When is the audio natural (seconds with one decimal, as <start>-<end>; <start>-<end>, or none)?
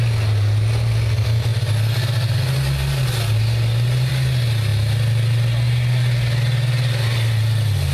0.0-7.9